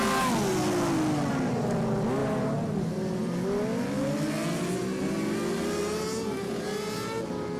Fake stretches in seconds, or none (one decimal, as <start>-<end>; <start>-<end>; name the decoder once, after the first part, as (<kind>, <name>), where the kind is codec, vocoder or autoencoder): 2.2-2.9 (vocoder, BigVGAN v2)